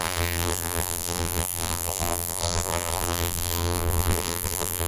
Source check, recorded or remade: remade